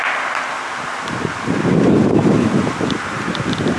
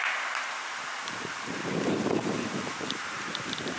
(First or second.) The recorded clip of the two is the first